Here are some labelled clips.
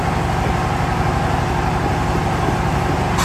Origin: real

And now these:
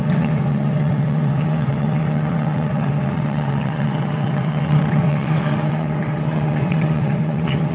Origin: fake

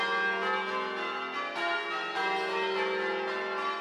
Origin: real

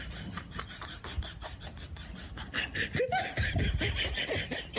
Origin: fake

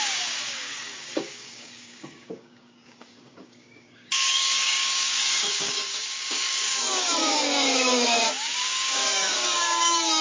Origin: fake